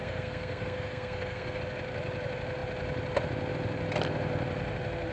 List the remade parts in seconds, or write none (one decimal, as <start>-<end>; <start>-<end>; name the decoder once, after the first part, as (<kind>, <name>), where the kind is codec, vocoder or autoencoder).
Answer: 0.0-1.6 (codec, SNAC)